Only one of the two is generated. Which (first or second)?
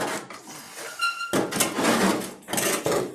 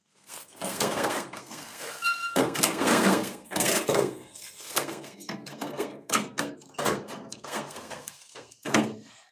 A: second